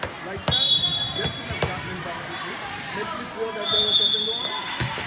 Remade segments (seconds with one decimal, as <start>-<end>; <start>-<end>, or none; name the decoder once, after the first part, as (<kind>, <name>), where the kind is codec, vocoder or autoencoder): none